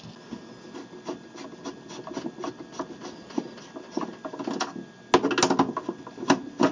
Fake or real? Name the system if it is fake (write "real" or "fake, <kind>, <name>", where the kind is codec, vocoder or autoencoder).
real